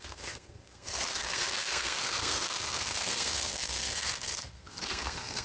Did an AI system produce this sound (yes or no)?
yes